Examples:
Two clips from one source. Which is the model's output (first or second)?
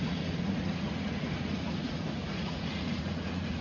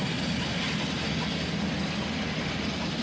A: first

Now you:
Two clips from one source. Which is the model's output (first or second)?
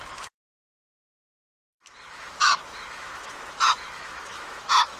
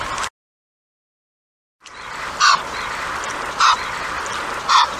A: first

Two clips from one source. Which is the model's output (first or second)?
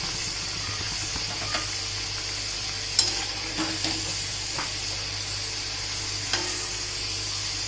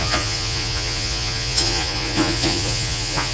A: second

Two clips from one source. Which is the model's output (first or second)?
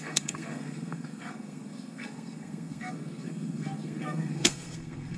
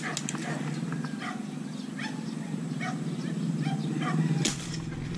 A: first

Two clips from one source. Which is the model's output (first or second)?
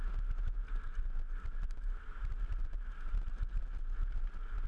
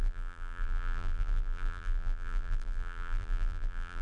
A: second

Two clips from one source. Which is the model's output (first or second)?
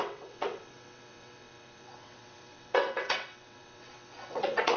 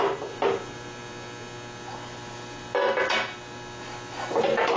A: first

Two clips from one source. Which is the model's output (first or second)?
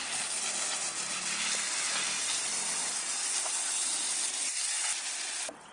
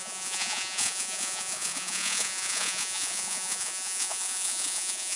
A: second